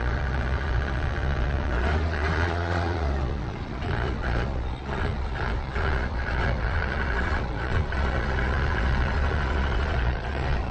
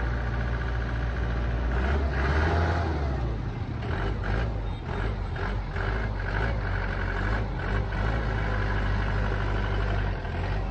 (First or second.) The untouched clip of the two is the second